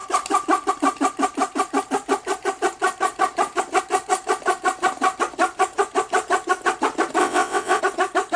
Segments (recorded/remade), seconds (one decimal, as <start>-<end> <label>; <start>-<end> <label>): 0.0-7.2 recorded; 7.2-7.8 remade; 7.8-8.4 recorded